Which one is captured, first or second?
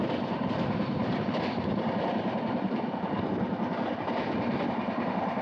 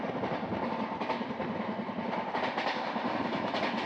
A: second